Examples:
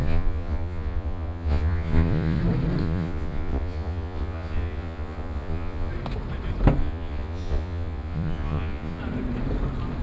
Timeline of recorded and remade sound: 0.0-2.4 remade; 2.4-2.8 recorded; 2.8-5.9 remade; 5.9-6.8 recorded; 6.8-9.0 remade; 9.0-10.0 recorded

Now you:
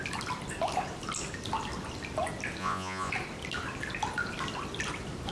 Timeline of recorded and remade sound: 0.0-2.6 recorded; 2.6-3.1 remade; 3.1-5.3 recorded

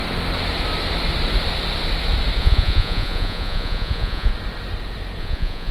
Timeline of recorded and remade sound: 0.0-2.4 recorded; 2.4-4.3 remade; 4.3-5.2 recorded; 5.2-5.7 remade

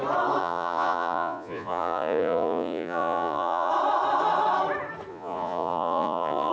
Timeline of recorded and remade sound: 0.0-0.4 recorded; 0.4-3.7 remade; 3.7-5.1 recorded; 5.1-6.5 remade

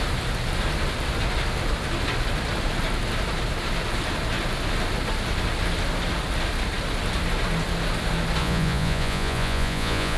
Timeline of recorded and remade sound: 0.0-8.4 recorded; 8.4-10.2 remade

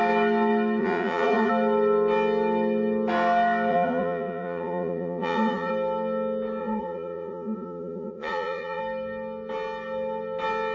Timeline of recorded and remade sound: 0.0-0.8 recorded; 0.8-1.5 remade; 1.5-3.7 recorded; 3.7-5.7 remade; 5.7-6.6 recorded; 6.6-8.8 remade; 8.8-10.7 recorded